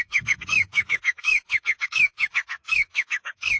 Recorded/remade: remade